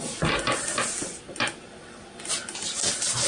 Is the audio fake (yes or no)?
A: no